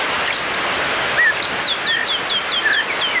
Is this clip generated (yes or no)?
no